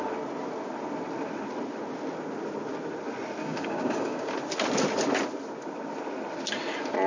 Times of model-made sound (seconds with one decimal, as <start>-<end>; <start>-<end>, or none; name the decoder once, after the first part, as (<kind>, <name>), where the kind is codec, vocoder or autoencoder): 3.4-4.3 (codec, DAC)

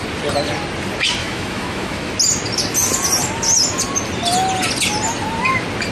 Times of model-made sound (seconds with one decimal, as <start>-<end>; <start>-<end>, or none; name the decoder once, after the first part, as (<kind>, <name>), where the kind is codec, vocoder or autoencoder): 1.2-2.1 (autoencoder, DAC-VAE)